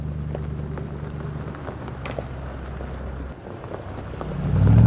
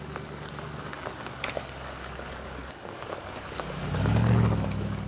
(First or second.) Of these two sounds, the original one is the first